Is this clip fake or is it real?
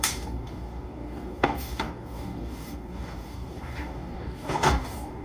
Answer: fake